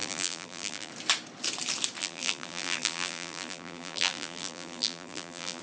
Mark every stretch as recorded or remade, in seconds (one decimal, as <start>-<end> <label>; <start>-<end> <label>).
0.0-0.9 remade; 0.9-2.0 recorded; 2.0-5.6 remade